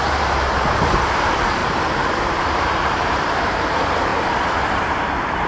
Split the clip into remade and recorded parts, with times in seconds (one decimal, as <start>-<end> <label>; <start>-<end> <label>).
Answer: 0.0-5.5 remade